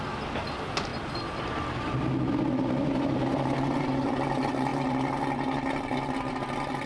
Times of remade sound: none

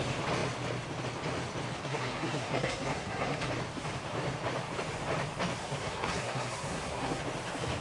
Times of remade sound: 1.8-3.5 (codec, SNAC); 5.6-7.2

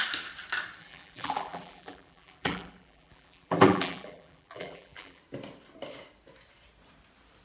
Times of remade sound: 0.8-5.2 (vocoder, BigVGAN v2)

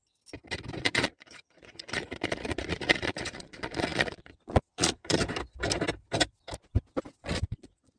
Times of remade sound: 0.8-5.2 (vocoder, Vocos); 7.2-8.0

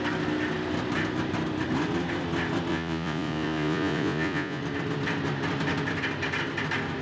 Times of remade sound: 2.7-4.6 (vocoder, Vocos)

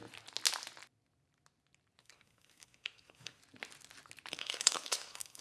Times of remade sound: 2.0-3.4 (codec, SNAC); 4.3-5.4

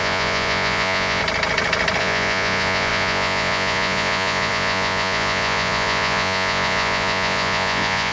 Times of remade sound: 0.0-1.2 (vocoder, Vocos); 2.0-8.1